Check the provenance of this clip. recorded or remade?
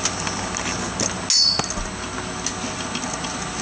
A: recorded